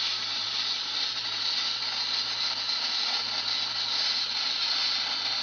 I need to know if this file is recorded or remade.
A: recorded